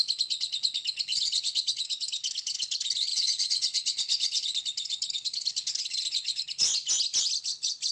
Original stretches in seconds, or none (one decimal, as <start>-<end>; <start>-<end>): 6.7-7.4